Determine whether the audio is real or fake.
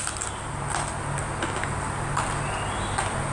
real